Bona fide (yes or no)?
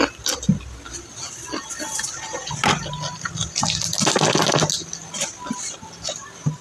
yes